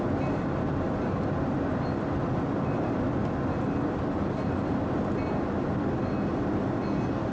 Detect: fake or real real